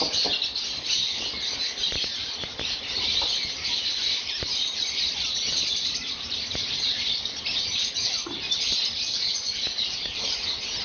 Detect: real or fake fake